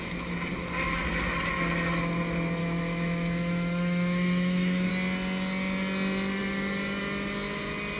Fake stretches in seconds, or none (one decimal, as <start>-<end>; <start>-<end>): 2.6-4.9

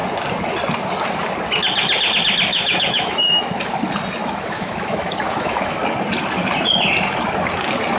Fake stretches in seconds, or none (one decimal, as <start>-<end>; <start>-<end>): 2.5-3.6; 4.2-5.8

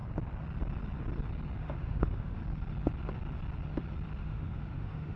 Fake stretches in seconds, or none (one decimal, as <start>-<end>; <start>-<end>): 1.6-2.4; 4.2-5.2

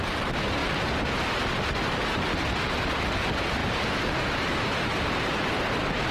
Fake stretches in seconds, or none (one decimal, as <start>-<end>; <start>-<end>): none

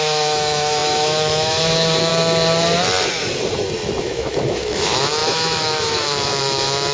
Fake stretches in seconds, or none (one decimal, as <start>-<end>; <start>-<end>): 0.0-2.1; 4.0-6.9